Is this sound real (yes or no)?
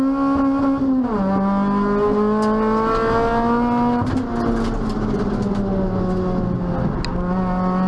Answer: yes